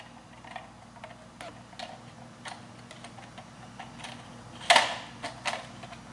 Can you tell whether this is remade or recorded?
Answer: recorded